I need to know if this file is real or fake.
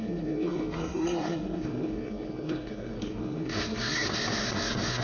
fake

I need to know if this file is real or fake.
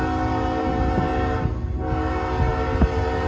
real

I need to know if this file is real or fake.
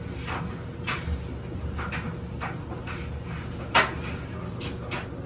real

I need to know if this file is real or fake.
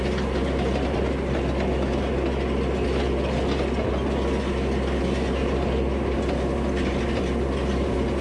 real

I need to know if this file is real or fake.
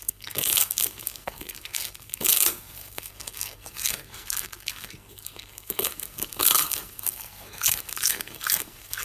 fake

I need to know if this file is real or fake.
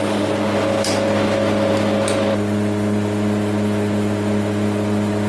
real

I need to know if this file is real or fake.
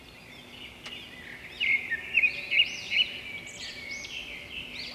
real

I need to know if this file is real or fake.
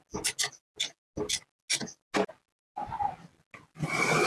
real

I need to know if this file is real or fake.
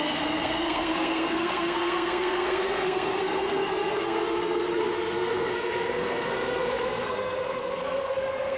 fake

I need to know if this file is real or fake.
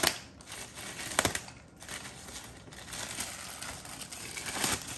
real